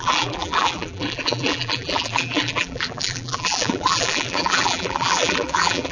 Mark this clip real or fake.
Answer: fake